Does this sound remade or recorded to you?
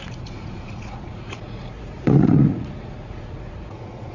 remade